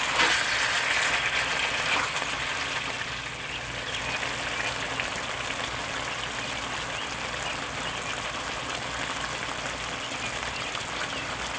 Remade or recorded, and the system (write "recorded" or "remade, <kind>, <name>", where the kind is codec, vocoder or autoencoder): recorded